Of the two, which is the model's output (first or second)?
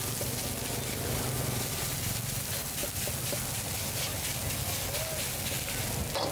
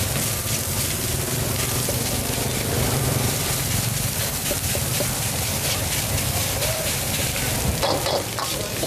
second